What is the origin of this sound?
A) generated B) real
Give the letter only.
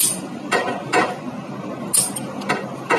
B